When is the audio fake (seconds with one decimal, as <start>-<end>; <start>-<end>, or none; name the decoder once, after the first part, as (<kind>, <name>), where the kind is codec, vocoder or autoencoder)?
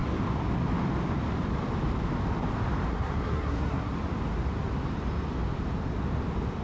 2.9-4.0 (codec, SNAC)